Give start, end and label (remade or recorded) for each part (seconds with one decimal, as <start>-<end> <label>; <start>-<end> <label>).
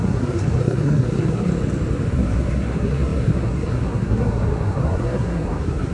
0.0-1.5 remade; 1.5-2.1 recorded; 2.1-5.9 remade